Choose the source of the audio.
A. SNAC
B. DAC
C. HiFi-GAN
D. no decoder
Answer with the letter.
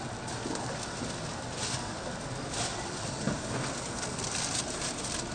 D